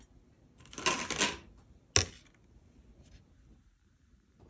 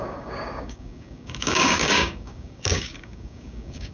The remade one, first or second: second